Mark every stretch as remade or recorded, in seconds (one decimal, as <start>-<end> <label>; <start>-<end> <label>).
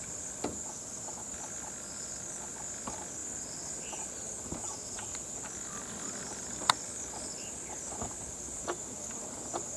0.0-9.8 recorded